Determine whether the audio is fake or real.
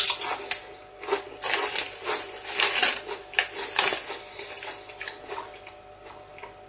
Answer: real